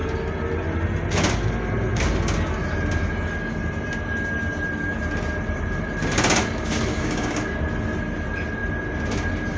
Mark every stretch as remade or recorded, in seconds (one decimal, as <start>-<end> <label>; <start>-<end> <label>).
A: 0.0-6.9 recorded; 6.9-7.4 remade; 7.4-9.6 recorded